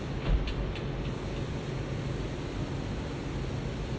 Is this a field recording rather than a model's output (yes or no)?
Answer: yes